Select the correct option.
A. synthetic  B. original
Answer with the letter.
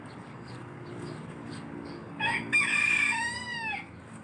A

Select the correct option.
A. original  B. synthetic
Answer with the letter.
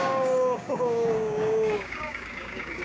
B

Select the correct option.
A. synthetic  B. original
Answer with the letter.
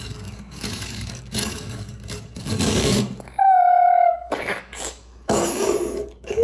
A